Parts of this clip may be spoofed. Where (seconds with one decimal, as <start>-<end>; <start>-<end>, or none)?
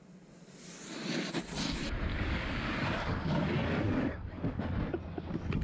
2.1-4.6